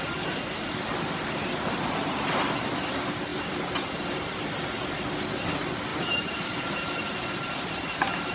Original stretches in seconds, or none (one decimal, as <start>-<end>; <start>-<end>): 0.0-5.9; 6.9-8.3